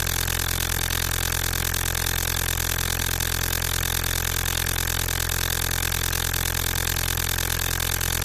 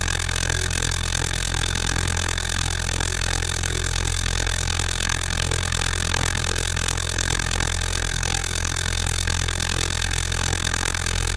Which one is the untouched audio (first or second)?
first